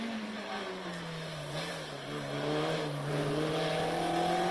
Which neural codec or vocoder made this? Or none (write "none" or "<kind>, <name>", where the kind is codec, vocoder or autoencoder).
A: none